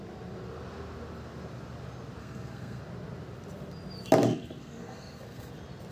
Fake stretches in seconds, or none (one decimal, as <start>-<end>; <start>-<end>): 2.2-2.8; 4.3-5.5